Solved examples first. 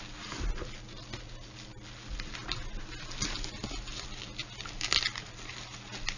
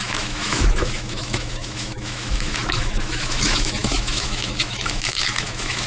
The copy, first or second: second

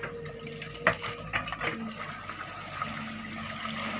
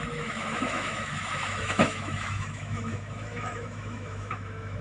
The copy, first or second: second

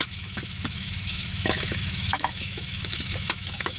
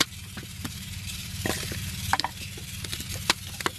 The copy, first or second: first